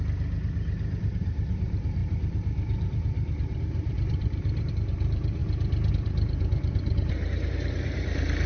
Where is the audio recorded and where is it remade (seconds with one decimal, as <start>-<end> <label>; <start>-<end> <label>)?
0.0-5.4 remade; 5.4-5.9 recorded; 5.9-8.5 remade